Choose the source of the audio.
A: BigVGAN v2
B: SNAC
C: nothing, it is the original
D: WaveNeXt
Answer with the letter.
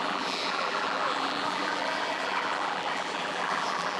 A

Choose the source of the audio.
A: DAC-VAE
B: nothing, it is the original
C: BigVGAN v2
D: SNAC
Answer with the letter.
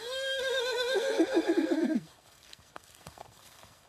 D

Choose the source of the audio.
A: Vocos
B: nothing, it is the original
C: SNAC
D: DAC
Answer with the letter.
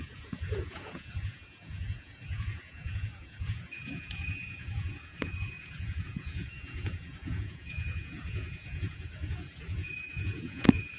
A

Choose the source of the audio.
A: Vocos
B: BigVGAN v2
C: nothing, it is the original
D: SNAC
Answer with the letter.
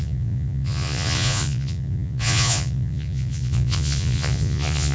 A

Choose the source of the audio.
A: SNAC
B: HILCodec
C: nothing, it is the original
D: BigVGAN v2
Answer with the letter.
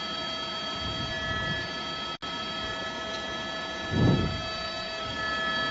C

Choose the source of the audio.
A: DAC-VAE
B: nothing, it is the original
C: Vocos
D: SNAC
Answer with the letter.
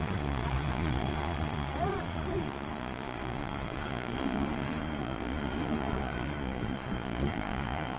C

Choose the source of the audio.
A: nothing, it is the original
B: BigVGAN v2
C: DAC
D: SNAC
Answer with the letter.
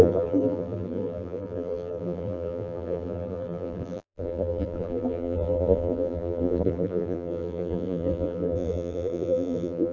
B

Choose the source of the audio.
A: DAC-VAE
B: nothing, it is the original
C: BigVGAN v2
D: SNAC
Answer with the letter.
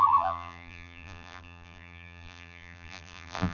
C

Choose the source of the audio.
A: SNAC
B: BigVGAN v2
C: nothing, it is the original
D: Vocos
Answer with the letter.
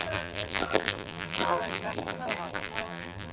B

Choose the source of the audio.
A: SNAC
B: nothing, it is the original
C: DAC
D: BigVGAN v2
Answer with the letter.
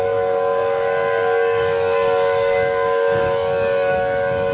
C